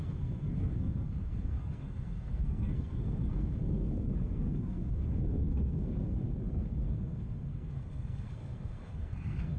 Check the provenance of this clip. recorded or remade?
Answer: remade